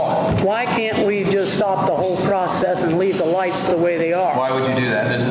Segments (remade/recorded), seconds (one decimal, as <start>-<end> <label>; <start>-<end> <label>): 0.0-2.3 recorded; 2.3-2.8 remade; 2.8-5.3 recorded